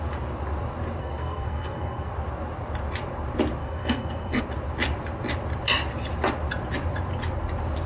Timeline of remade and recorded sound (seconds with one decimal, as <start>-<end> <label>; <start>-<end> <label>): 0.0-1.0 recorded; 1.0-2.1 remade; 2.1-3.6 recorded; 3.6-4.4 remade; 4.4-7.9 recorded